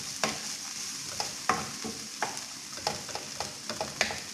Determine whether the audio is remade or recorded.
recorded